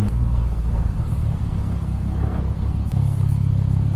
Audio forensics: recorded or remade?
remade